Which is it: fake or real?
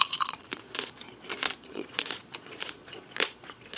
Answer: fake